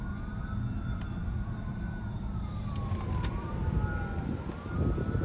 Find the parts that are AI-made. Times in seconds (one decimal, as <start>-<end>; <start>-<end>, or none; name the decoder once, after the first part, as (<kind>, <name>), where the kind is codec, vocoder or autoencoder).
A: 1.2-4.0 (vocoder, BigVGAN v2)